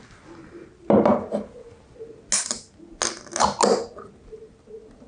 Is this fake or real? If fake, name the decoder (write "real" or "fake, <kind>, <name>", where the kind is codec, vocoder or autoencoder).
real